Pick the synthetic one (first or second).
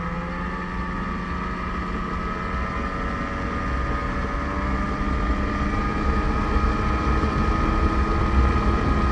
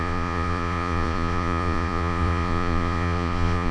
second